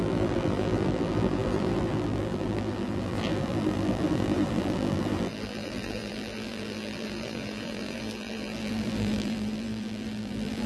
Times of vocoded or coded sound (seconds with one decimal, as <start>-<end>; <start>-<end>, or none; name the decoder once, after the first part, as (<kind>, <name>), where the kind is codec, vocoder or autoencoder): 0.0-10.7 (vocoder, BigVGAN v2)